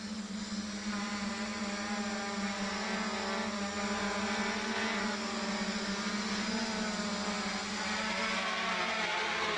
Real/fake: real